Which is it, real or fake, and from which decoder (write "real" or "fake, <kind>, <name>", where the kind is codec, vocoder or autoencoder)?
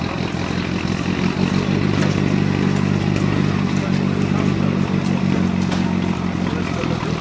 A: real